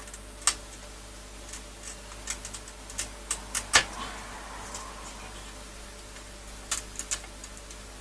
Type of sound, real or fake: real